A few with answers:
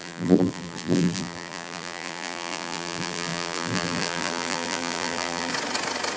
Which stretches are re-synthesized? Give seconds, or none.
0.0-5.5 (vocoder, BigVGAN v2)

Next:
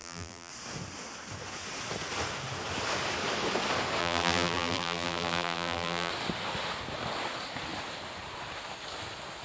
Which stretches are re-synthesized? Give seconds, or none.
0.0-0.5 (vocoder, BigVGAN v2); 4.0-6.1

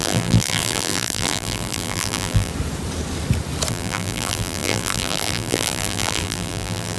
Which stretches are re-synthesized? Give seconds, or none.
0.0-2.5 (vocoder, BigVGAN v2); 3.7-7.0

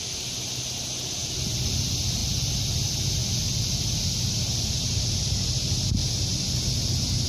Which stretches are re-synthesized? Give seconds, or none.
1.2-1.8 (vocoder, BigVGAN v2)

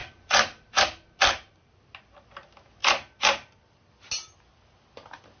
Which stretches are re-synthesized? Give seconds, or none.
0.0-0.8 (vocoder, BigVGAN v2)

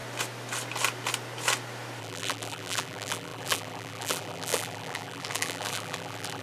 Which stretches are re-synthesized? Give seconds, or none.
2.0-6.4 (vocoder, BigVGAN v2)

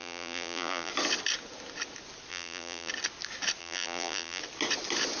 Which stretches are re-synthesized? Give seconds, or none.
0.0-0.9 (vocoder, BigVGAN v2); 2.3-2.9; 3.6-4.4

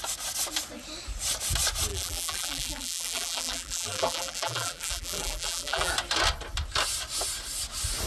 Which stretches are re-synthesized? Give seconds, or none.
1.9-5.9 (vocoder, BigVGAN v2)